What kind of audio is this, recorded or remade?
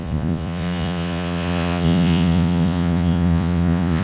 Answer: remade